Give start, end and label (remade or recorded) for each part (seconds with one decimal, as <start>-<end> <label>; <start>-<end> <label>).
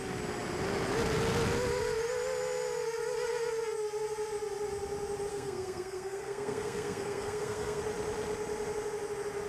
0.0-5.3 recorded; 5.3-7.8 remade; 7.8-9.5 recorded